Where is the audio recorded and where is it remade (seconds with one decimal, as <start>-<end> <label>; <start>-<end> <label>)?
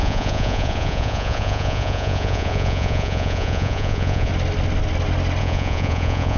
0.0-4.3 remade; 4.3-5.4 recorded; 5.4-6.4 remade